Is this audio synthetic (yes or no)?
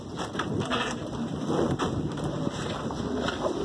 yes